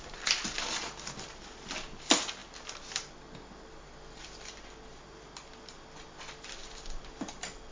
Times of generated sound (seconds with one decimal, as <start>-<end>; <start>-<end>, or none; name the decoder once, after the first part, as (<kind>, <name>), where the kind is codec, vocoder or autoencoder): none